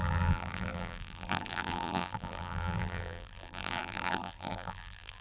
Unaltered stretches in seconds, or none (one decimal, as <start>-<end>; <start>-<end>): none